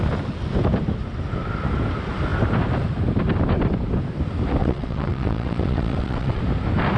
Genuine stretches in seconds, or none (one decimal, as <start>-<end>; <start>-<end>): 0.0-4.6; 6.4-7.0